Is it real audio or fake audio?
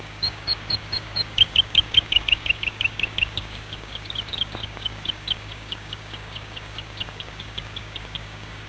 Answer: fake